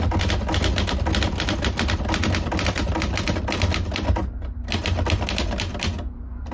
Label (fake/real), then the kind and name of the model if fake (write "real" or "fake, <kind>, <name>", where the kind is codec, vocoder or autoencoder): real